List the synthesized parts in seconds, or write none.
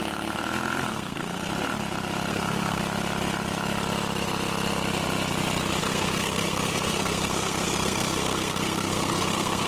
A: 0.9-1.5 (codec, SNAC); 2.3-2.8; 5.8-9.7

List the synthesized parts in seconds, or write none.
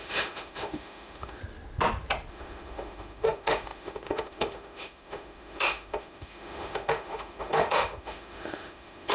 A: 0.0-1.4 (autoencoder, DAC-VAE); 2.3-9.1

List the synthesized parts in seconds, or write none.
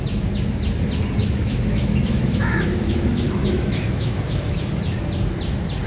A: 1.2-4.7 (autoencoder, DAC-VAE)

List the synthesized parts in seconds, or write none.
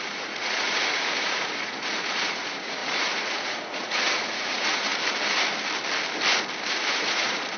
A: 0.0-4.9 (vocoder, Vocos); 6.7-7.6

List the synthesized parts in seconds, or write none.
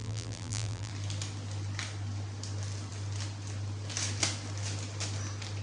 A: 0.0-0.9 (vocoder, BigVGAN v2)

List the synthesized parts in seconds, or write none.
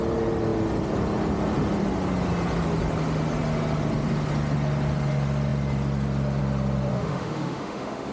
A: 6.9-8.1 (autoencoder, DAC-VAE)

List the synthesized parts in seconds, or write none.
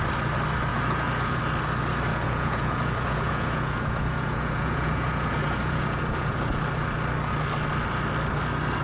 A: 0.7-1.4 (vocoder, Vocos); 2.1-6.6